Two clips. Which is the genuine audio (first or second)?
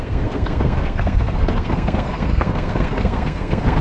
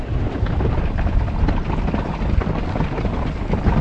second